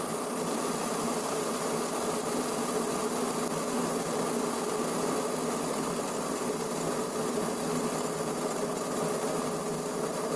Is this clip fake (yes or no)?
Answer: no